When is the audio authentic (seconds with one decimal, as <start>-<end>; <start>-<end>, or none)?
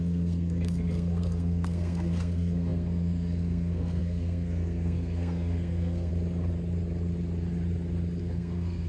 6.1-8.2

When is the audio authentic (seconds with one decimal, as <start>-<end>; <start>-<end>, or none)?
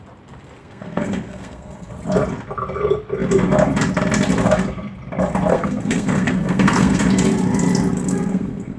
0.0-0.6; 1.9-5.5; 7.0-8.0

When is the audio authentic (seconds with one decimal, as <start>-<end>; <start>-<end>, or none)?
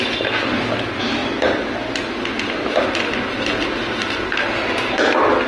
0.0-5.5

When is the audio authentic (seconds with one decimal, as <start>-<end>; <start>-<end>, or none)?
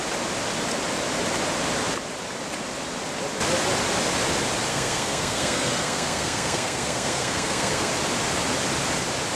0.0-4.7; 7.9-9.4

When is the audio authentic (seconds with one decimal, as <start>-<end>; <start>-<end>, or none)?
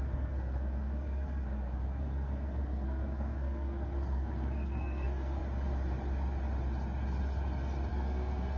5.4-7.9